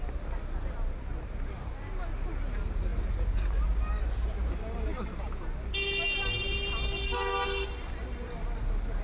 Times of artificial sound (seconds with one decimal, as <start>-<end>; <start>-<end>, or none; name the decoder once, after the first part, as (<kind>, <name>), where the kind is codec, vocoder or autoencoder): none